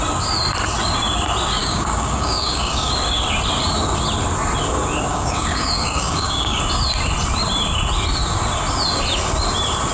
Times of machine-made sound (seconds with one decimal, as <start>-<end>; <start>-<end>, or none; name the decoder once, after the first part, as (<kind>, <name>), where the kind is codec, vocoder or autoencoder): 1.6-2.9 (codec, DAC); 5.1-6.6